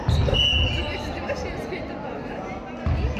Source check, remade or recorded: recorded